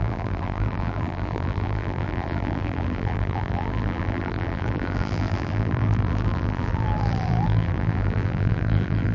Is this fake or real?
fake